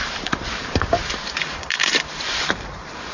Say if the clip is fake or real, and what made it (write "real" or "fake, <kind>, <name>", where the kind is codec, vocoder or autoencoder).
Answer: fake, vocoder, BigVGAN v2